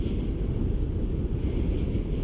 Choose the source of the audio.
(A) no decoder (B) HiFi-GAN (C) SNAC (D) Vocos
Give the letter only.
A